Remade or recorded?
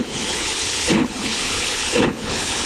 remade